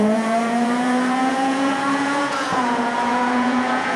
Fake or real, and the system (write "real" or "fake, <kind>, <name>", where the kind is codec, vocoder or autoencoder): fake, vocoder, Vocos